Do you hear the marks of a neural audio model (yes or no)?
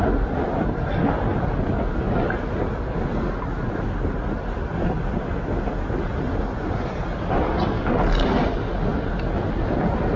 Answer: no